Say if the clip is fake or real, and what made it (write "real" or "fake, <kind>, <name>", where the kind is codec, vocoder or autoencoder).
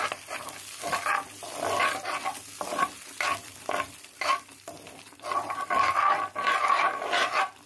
fake, vocoder, BigVGAN v2